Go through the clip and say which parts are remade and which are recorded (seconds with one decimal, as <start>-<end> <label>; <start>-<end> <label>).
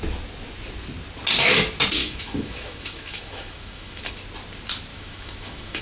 0.0-2.0 recorded; 2.0-4.1 remade; 4.1-4.9 recorded; 4.9-5.8 remade